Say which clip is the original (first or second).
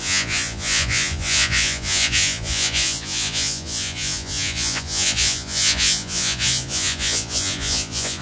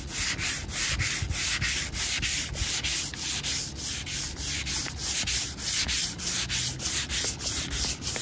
second